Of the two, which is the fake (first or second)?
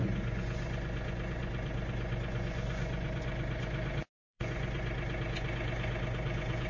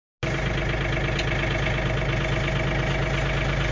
first